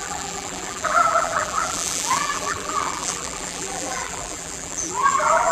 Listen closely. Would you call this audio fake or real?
fake